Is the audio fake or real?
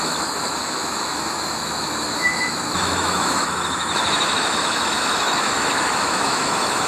fake